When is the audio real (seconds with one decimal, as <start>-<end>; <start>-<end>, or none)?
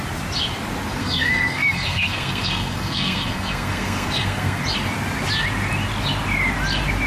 0.0-1.0; 4.6-7.1